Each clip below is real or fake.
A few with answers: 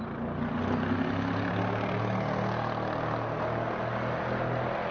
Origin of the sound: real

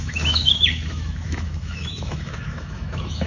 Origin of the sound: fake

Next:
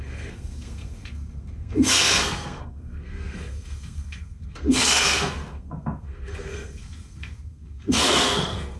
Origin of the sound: fake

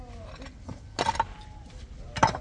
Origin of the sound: real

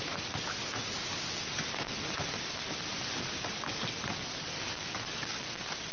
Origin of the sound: real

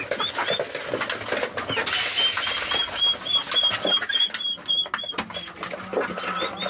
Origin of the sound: real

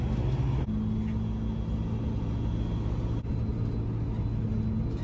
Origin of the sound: real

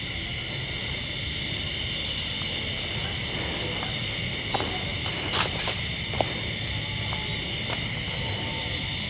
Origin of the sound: real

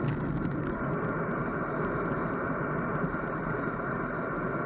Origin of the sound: real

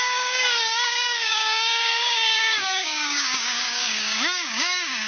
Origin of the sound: fake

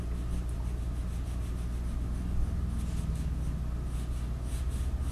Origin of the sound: real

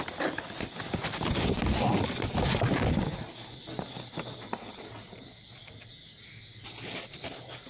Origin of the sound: real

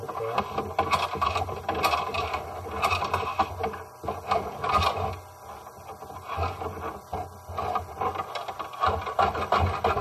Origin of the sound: real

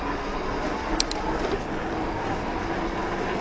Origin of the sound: real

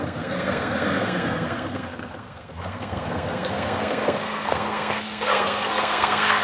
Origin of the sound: fake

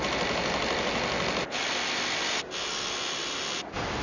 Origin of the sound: real